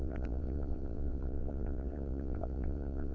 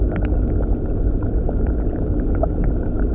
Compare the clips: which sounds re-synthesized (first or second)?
first